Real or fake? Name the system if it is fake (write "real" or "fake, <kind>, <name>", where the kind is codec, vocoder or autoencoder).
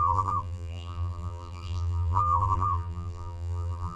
fake, vocoder, BigVGAN v2